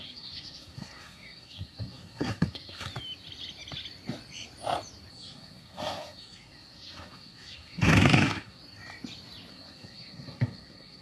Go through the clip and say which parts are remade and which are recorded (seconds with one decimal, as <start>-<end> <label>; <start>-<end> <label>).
0.0-2.9 remade; 2.9-5.1 recorded; 5.1-8.6 remade; 8.6-9.5 recorded; 9.5-11.0 remade